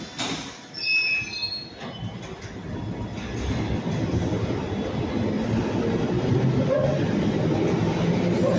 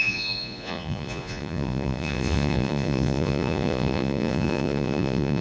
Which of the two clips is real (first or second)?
first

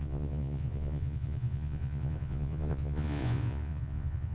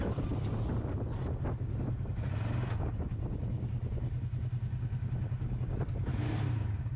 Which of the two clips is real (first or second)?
second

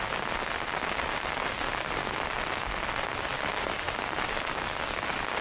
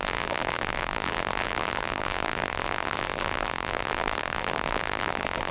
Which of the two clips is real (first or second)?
first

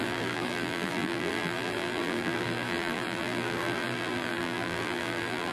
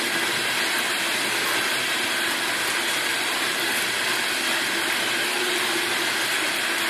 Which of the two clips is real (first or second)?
second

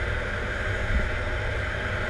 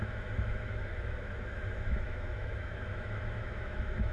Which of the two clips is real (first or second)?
first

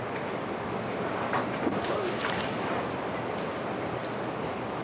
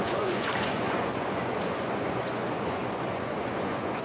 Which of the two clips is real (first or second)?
first